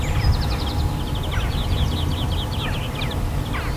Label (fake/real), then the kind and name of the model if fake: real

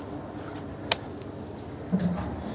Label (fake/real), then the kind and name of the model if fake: real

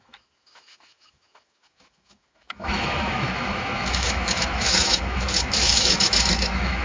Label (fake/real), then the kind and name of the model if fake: fake, autoencoder, DAC-VAE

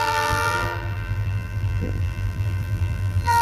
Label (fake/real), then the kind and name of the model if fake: fake, vocoder, BigVGAN v2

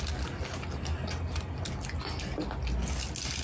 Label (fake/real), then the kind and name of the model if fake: real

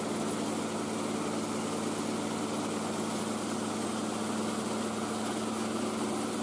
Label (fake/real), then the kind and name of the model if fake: real